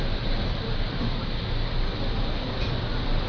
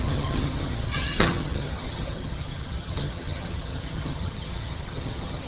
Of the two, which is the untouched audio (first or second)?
first